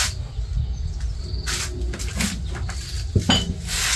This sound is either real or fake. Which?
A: real